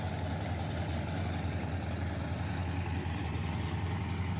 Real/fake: real